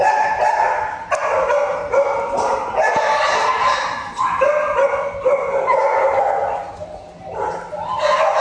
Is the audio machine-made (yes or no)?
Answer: no